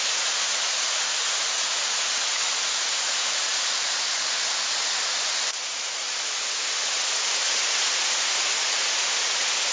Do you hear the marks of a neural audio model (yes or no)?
yes